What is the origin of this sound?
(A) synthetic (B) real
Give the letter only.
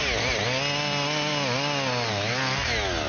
B